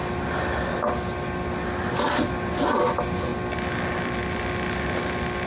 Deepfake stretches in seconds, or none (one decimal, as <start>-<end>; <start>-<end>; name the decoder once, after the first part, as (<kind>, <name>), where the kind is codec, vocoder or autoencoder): none